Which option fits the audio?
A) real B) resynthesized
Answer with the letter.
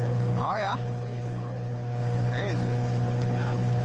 B